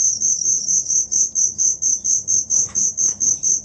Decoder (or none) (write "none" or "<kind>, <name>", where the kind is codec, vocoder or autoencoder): autoencoder, DAC-VAE